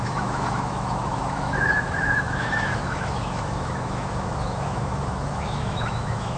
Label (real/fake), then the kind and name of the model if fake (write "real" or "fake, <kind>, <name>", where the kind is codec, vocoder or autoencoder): fake, autoencoder, DAC-VAE